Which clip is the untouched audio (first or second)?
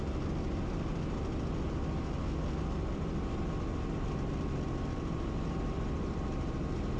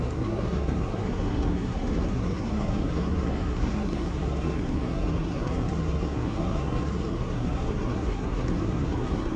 first